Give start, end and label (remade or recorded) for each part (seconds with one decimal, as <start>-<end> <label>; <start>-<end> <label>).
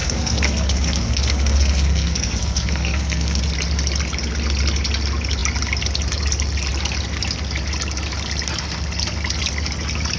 0.0-3.4 remade; 3.4-10.2 recorded